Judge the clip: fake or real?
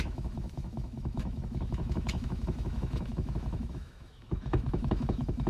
fake